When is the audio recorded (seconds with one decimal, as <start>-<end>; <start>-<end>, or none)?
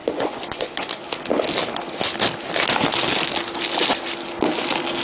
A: 0.9-5.0